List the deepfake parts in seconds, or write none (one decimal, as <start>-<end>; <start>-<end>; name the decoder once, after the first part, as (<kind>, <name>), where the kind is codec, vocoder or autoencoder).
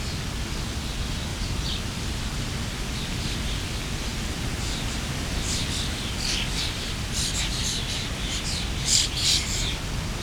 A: 1.3-2.7 (vocoder, BigVGAN v2)